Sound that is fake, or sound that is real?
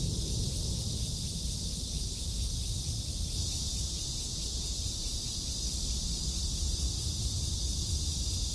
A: real